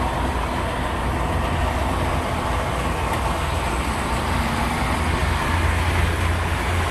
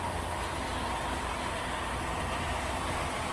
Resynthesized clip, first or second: second